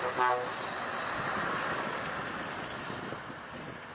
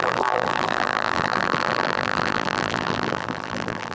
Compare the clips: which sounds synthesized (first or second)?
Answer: second